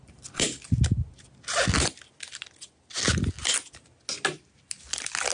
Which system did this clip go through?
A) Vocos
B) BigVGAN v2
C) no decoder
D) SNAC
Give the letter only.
C